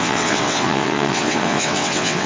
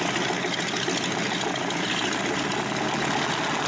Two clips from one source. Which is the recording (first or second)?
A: second